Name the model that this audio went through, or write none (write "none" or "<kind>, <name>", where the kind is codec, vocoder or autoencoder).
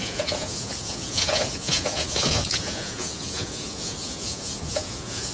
vocoder, Vocos